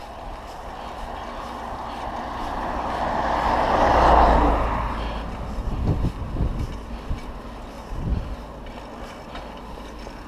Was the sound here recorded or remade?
recorded